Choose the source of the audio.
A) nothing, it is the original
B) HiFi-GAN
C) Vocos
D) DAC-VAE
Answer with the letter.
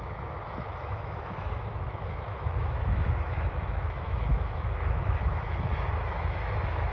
D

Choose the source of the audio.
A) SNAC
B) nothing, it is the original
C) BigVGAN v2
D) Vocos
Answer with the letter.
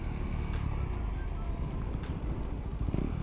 B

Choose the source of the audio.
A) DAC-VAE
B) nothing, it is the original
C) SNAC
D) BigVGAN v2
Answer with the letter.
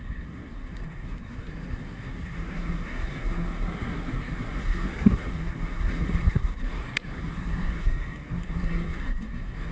C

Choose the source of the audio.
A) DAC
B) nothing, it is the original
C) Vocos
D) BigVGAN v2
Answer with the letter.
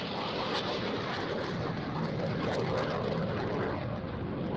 B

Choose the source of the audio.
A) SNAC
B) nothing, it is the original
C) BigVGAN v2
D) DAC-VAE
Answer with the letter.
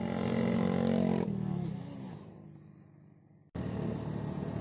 B